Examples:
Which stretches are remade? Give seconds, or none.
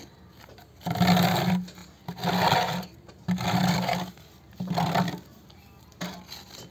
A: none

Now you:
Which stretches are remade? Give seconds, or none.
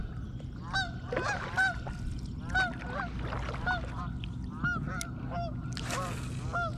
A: none